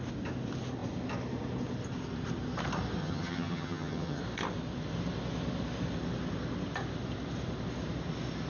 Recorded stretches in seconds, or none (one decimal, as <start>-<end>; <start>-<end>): 0.0-3.0; 4.2-8.5